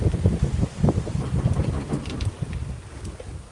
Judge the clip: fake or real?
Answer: real